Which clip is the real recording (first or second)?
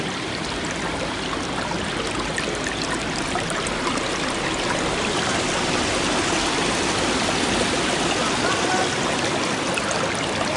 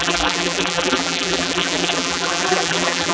first